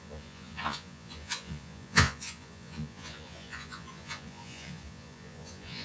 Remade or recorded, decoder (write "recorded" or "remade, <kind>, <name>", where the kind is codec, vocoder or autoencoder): remade, vocoder, Vocos